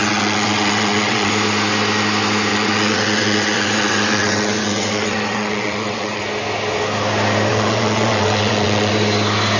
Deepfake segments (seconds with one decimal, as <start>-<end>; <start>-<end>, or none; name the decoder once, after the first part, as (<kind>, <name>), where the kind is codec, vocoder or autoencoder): 0.0-1.3 (vocoder, WaveNeXt); 2.5-6.2; 7.5-8.9